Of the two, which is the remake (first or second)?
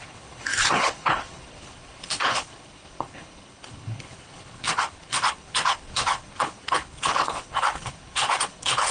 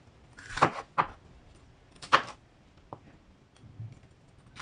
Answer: first